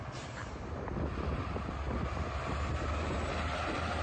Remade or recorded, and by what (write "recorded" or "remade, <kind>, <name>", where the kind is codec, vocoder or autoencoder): recorded